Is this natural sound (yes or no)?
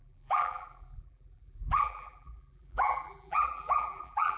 no